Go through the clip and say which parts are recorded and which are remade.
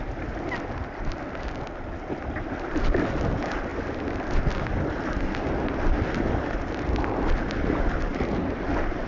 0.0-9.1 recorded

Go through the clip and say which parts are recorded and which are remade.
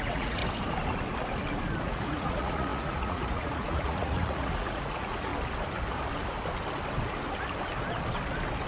0.0-0.4 remade; 0.4-1.8 recorded; 1.8-5.3 remade; 5.3-8.7 recorded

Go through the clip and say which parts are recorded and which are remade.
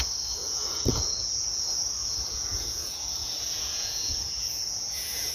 0.0-0.4 recorded; 0.4-1.6 remade; 1.6-2.0 recorded; 2.0-5.3 remade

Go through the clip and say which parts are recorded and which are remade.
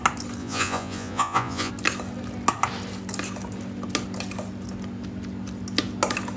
0.0-0.4 recorded; 0.4-1.7 remade; 1.7-6.4 recorded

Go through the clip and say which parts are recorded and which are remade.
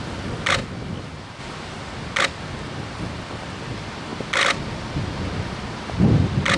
0.0-6.6 recorded